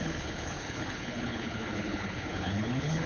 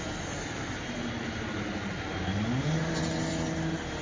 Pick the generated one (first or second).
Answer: first